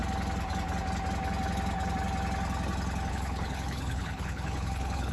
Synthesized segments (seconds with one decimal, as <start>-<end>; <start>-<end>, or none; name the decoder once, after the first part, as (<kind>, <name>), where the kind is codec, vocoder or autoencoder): 3.1-5.1 (codec, HILCodec)